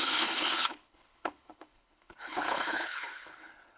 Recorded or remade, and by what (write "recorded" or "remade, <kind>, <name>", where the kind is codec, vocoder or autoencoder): remade, codec, HILCodec